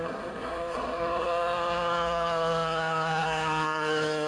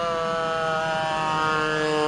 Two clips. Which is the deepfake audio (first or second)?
first